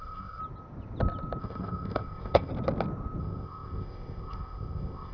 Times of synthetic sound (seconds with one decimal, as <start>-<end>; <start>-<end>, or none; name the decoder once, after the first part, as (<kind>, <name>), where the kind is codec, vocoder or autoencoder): 0.0-0.4 (codec, ZipCodec); 1.4-2.5; 3.2-5.1